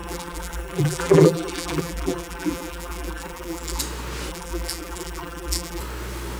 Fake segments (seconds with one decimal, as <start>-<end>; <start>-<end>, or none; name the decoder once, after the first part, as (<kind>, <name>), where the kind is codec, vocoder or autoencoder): 0.0-3.8 (vocoder, BigVGAN v2); 4.3-5.8